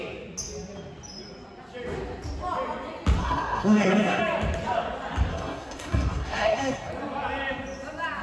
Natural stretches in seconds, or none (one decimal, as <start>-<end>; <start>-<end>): 0.0-3.2; 4.2-5.3; 6.9-8.2